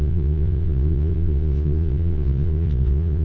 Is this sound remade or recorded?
remade